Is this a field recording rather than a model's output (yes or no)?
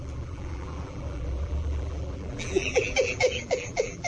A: no